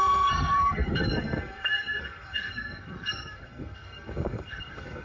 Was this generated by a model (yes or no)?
yes